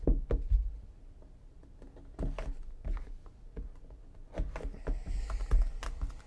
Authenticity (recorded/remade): recorded